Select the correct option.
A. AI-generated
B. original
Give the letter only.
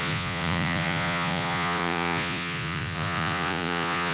A